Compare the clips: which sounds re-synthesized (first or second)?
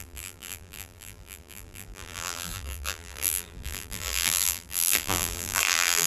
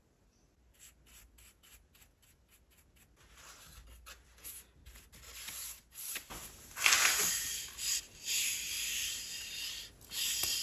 first